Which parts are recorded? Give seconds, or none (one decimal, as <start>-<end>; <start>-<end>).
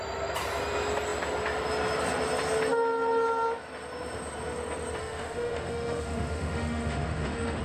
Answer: 0.0-5.0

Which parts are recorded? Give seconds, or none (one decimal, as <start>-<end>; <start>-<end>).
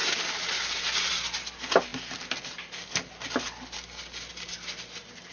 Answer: 0.0-5.3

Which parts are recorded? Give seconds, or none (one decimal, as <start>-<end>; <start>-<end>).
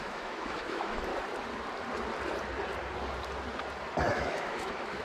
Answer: 1.1-4.1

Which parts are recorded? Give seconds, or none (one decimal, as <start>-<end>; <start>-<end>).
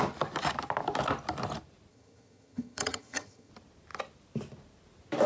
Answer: 0.0-1.9; 3.5-5.3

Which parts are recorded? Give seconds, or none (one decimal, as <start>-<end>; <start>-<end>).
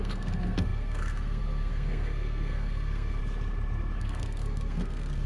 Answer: 3.2-4.0